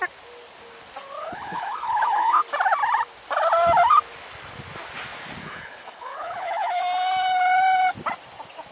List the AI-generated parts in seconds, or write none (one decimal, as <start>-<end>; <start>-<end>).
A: 1.2-2.4; 5.4-6.8